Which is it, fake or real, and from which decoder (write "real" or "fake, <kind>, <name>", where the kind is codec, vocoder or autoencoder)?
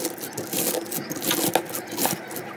real